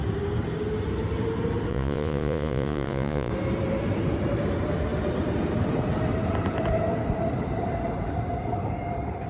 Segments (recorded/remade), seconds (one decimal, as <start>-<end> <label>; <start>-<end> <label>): 0.0-1.7 recorded; 1.7-3.3 remade; 3.3-9.3 recorded